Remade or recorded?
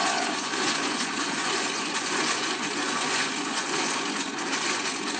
remade